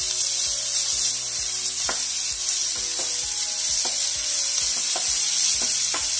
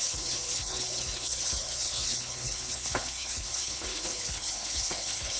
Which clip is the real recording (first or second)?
first